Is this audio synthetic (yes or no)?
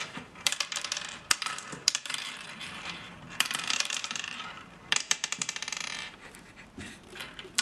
yes